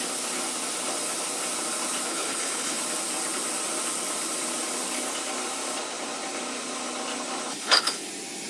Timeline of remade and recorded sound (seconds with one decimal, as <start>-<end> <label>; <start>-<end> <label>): 0.0-2.1 recorded; 2.1-2.8 remade; 2.8-7.5 recorded; 7.5-8.1 remade; 8.1-8.5 recorded